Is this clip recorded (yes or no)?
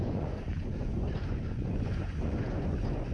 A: no